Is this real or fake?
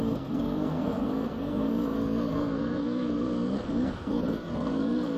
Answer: fake